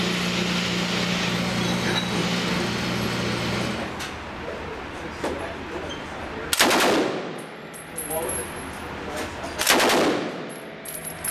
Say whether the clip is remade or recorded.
recorded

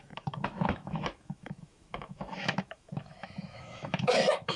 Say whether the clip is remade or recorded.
remade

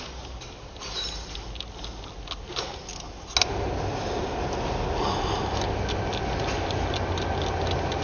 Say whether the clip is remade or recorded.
recorded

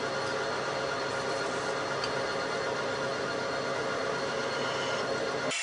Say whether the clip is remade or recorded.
recorded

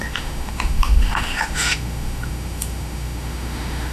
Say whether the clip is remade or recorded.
remade